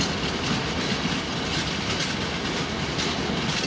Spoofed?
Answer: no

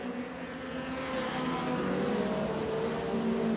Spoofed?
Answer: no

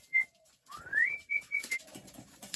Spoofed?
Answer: yes